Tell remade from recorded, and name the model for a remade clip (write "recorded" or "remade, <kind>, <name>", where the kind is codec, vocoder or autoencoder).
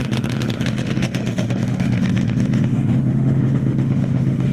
remade, autoencoder, DAC-VAE